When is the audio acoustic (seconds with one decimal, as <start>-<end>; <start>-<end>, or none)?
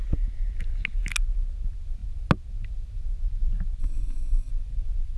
0.0-3.8; 4.5-5.2